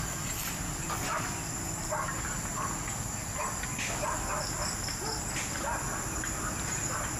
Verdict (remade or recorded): recorded